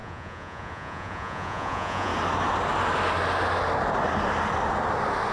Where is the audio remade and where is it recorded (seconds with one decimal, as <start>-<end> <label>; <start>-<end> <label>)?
0.0-2.1 remade; 2.1-5.3 recorded

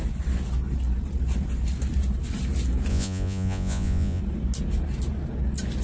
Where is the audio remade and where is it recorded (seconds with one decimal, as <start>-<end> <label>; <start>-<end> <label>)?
0.0-2.9 recorded; 2.9-4.2 remade; 4.2-5.8 recorded